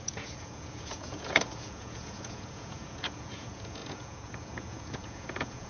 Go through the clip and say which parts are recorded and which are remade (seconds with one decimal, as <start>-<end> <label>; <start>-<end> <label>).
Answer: 0.0-5.7 remade